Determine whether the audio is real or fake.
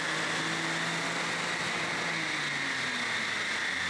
real